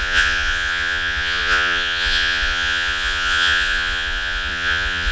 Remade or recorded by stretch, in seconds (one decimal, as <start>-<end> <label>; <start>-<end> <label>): 0.0-5.1 remade